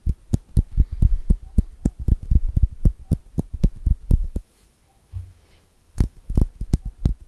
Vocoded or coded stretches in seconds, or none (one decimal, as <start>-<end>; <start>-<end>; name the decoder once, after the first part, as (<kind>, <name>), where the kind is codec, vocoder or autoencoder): 4.1-6.4 (autoencoder, DAC-VAE)